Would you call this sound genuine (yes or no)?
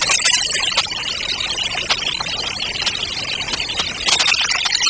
yes